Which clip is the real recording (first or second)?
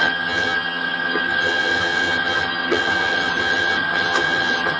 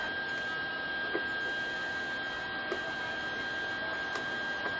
second